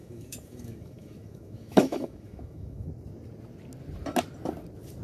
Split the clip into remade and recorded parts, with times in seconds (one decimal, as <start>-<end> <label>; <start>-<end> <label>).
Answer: 0.0-2.9 remade; 2.9-5.0 recorded